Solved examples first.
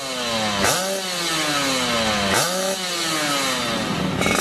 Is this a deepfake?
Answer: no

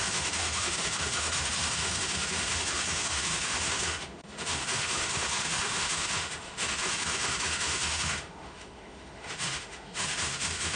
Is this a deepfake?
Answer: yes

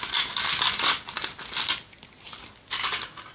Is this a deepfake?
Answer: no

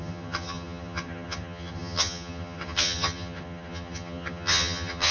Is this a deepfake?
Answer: yes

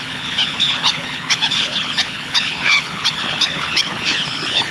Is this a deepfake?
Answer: yes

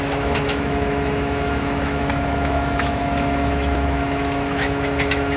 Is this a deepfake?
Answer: yes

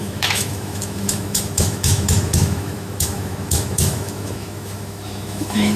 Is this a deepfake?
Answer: yes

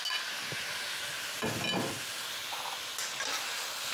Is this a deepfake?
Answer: no